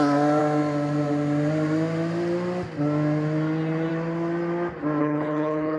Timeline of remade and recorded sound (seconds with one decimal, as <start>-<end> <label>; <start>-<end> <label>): 0.0-5.0 recorded; 5.0-5.8 remade

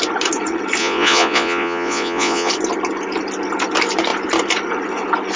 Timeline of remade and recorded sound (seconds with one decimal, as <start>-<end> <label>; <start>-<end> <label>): 0.0-0.8 recorded; 0.8-2.5 remade; 2.5-5.4 recorded